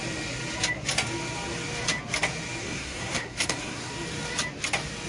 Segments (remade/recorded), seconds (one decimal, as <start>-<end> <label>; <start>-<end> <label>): 0.0-2.6 recorded; 2.6-3.9 remade; 3.9-5.1 recorded

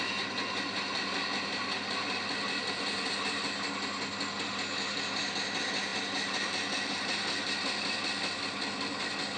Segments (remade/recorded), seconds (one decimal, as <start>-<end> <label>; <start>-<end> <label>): 0.0-9.4 recorded